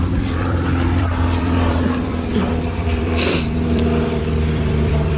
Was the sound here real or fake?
fake